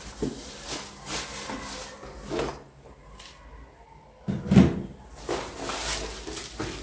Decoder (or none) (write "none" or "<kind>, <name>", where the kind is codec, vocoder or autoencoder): none